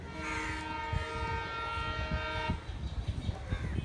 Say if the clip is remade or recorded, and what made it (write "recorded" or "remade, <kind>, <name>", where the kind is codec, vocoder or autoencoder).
recorded